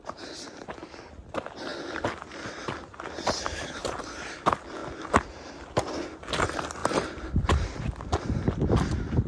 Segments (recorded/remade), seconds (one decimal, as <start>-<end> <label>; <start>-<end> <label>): 0.0-9.3 recorded